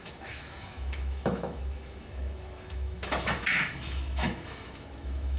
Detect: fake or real fake